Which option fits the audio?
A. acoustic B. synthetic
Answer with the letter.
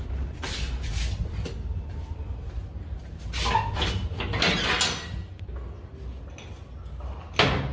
A